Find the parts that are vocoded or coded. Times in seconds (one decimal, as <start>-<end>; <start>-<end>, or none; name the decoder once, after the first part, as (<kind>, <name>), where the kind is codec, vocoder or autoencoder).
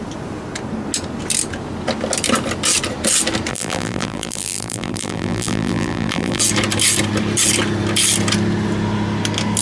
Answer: 3.5-6.4 (vocoder, BigVGAN v2)